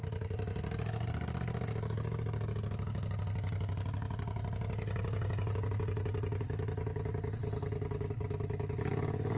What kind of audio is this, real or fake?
real